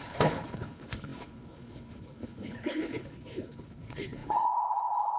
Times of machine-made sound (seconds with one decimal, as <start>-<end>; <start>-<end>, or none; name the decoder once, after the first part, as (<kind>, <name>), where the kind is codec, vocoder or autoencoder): 0.0-5.2 (codec, HILCodec)